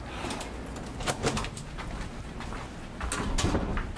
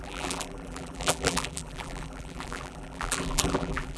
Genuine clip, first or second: first